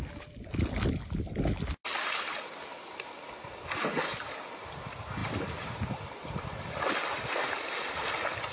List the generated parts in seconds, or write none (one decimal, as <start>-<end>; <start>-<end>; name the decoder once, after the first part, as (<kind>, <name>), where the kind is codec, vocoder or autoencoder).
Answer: 5.2-6.9 (vocoder, BigVGAN v2)